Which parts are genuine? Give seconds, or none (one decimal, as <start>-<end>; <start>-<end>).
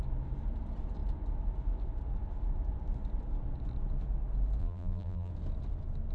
0.0-4.6; 5.3-6.1